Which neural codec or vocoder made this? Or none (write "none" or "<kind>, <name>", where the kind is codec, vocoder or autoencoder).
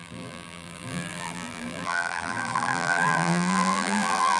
vocoder, BigVGAN v2